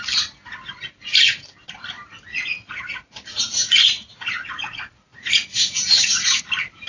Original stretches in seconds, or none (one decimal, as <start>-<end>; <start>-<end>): 0.0-2.3; 6.4-6.9